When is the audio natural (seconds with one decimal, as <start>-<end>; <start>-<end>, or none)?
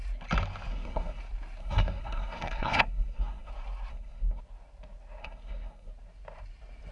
0.0-0.7; 1.2-1.6; 3.5-3.9; 4.4-5.2; 5.9-6.9